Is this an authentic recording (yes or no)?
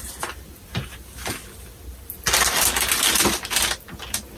yes